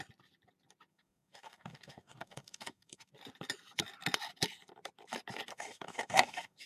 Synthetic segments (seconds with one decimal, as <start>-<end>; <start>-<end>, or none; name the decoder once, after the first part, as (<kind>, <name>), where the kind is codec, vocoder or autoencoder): 0.9-3.1 (codec, DAC); 5.5-6.7